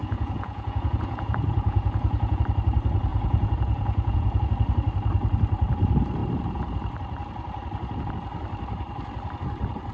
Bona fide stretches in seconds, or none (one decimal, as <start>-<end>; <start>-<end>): 2.4-3.1; 4.4-9.9